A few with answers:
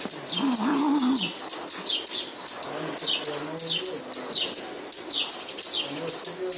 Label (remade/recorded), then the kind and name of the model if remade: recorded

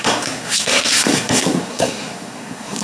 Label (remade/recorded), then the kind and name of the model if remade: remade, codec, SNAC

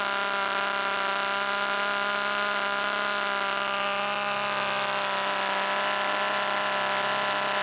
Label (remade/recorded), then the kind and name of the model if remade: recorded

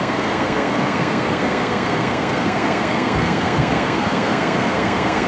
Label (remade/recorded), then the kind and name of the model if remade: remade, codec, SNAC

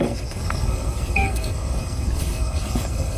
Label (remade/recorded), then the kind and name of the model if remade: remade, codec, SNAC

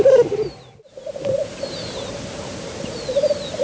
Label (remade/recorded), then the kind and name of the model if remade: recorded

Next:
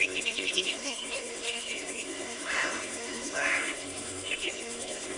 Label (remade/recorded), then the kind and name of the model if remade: remade, codec, SNAC